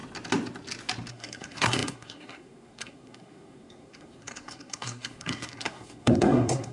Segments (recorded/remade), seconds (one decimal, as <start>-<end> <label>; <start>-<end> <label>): 0.0-1.1 recorded; 1.1-6.7 remade